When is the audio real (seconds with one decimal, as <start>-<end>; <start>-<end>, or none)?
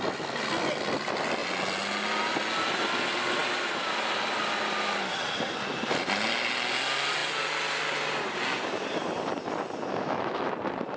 0.0-9.9; 10.5-11.0